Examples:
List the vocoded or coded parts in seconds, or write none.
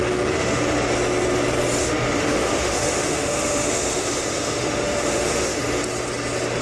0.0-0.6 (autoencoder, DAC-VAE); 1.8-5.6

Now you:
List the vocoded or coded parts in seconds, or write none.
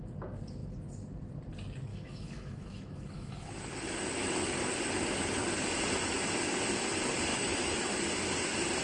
1.9-3.5 (autoencoder, DAC-VAE); 7.3-7.9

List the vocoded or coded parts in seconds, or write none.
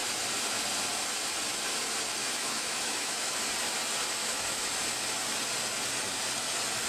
2.2-3.3 (autoencoder, DAC-VAE); 4.2-4.7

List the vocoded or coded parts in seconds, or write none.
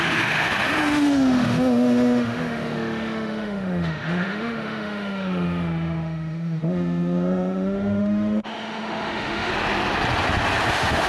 0.0-9.5 (autoencoder, DAC-VAE); 10.7-11.1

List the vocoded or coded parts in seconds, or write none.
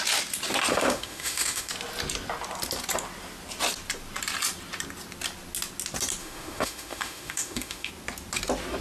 0.7-1.7 (autoencoder, DAC-VAE); 6.2-7.9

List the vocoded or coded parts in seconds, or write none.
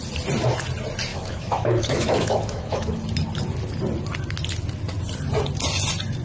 1.1-3.0 (autoencoder, DAC-VAE)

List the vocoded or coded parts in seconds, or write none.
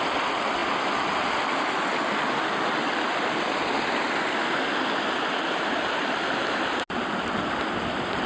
none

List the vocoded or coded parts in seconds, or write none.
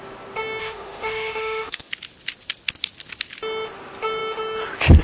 0.6-1.9 (autoencoder, DAC-VAE)